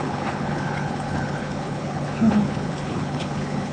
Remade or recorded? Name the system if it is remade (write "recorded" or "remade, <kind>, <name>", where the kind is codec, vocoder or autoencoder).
remade, codec, HILCodec